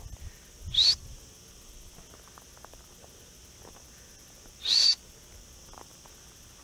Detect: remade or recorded recorded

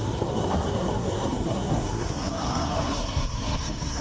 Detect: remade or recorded remade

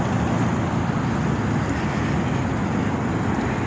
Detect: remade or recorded recorded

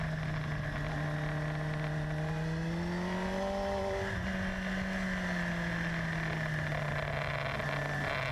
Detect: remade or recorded recorded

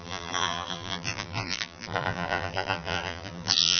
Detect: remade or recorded remade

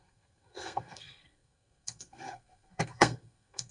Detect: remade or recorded remade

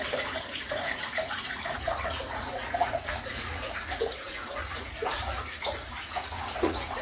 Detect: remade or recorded remade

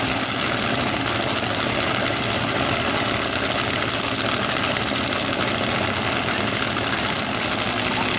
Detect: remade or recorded recorded